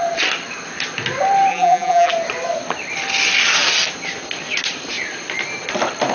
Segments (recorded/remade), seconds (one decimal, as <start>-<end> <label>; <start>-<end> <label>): 0.0-1.5 recorded; 1.5-2.1 remade; 2.1-6.1 recorded